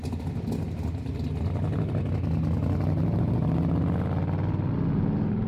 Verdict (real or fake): real